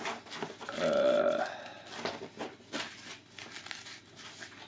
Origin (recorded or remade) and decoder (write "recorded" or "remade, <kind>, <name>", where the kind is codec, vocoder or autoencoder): recorded